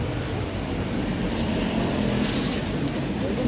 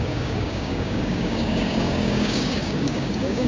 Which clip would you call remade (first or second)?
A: second